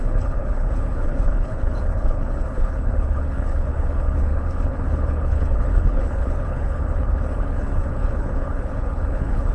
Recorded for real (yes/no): no